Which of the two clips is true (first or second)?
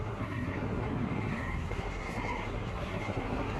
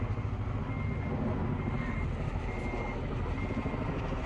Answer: second